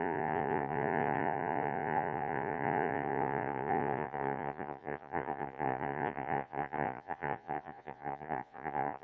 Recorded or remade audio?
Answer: remade